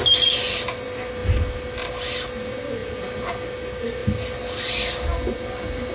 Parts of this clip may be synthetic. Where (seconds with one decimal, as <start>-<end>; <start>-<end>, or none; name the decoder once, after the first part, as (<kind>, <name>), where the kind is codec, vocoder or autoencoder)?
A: none